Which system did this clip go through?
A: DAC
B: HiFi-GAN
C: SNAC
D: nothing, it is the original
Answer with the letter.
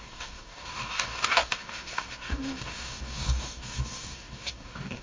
A